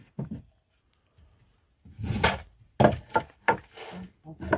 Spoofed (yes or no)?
no